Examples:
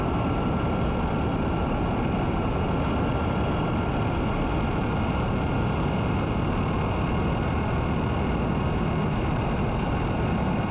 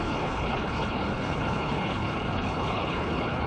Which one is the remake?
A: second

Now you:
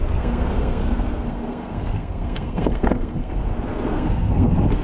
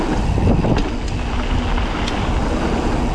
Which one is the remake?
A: first